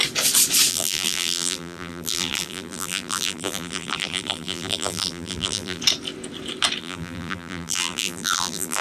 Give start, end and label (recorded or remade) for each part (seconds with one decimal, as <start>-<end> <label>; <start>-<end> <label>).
0.0-0.7 recorded; 0.7-5.8 remade; 5.8-6.8 recorded; 6.8-8.8 remade